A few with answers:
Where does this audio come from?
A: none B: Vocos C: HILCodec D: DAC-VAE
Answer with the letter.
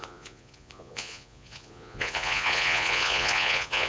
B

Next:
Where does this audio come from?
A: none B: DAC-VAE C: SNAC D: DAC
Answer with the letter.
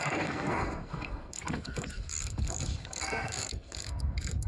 C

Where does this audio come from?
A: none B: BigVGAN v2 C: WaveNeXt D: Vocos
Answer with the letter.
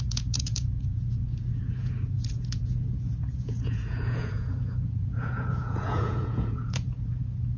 D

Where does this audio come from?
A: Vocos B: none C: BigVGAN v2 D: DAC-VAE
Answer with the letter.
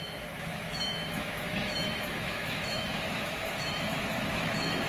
D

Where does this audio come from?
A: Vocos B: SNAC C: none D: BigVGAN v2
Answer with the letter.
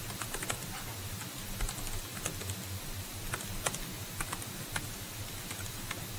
C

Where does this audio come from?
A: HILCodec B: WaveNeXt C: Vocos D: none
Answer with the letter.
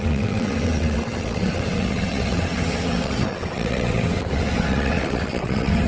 B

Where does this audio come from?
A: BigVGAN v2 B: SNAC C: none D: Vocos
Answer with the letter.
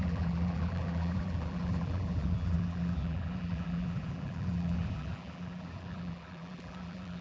A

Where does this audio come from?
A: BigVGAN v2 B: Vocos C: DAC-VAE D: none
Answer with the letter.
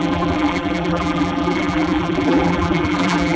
A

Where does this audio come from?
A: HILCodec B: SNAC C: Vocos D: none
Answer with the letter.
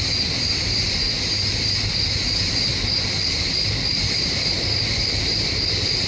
D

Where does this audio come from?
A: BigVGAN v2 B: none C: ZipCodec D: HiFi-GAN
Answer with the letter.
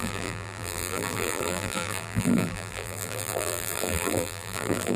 A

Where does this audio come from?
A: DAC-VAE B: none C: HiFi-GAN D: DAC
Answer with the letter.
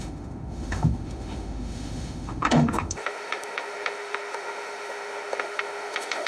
A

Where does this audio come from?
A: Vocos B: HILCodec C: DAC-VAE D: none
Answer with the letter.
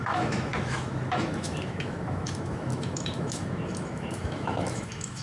C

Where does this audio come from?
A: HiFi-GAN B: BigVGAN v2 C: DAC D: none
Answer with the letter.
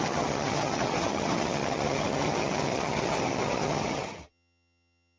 A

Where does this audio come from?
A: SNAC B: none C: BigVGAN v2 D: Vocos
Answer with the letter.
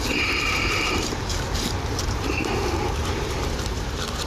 C